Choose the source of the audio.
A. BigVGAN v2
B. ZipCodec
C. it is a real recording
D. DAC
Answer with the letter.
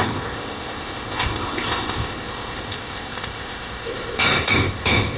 B